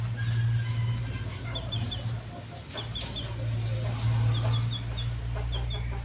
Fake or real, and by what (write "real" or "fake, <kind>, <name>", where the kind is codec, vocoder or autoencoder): real